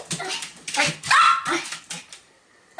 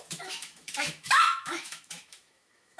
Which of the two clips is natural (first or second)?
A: first